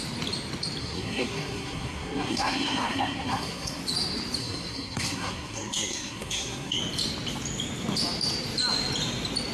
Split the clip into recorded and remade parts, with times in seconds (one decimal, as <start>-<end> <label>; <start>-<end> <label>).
0.0-0.8 recorded; 0.8-3.8 remade; 3.8-4.4 recorded; 4.4-6.8 remade; 6.8-9.5 recorded